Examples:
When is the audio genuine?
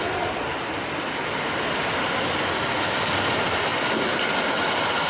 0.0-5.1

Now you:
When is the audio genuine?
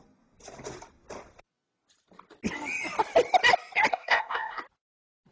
0.0-3.9; 4.6-5.3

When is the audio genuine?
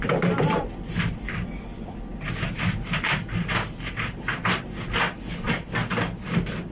0.0-6.7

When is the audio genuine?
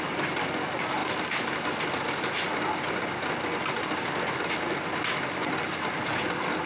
0.0-6.7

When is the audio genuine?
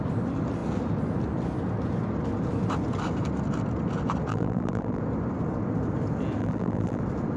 0.0-4.3; 5.0-6.4; 7.0-7.4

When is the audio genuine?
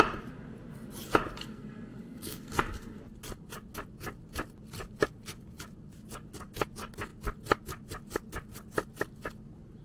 0.0-1.4; 3.0-9.8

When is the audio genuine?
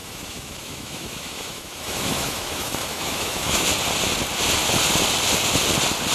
3.7-6.1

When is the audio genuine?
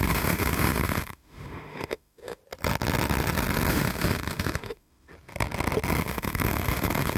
2.4-3.7; 5.1-6.0